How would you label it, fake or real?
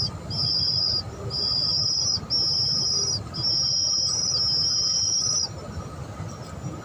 real